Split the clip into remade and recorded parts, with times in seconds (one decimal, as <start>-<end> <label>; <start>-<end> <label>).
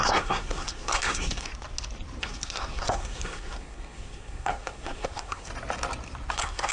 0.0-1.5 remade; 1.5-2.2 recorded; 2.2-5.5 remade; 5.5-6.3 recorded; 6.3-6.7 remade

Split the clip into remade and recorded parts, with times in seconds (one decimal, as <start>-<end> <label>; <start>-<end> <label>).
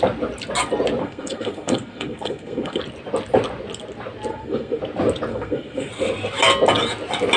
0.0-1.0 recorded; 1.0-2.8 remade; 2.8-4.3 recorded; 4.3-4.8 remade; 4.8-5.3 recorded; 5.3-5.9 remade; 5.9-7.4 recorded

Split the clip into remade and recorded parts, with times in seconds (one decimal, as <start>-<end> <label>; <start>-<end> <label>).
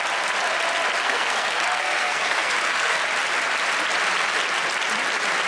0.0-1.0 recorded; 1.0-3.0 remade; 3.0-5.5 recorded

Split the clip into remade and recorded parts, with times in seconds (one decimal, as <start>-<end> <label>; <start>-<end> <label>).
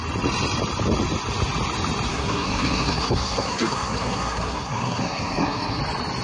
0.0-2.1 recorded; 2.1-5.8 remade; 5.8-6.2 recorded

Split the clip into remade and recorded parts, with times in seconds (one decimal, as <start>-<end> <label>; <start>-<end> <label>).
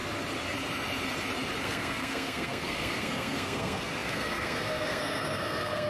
0.0-1.6 recorded; 1.6-5.9 remade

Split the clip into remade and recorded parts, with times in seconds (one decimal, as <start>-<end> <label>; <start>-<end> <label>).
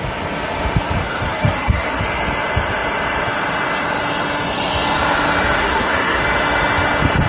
0.0-1.0 recorded; 1.0-2.0 remade; 2.0-5.6 recorded; 5.6-6.2 remade; 6.2-7.3 recorded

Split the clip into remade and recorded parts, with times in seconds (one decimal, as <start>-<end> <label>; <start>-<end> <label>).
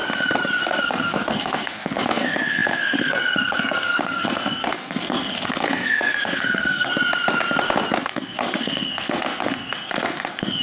0.0-0.6 recorded; 0.6-6.9 remade; 6.9-8.0 recorded; 8.0-10.6 remade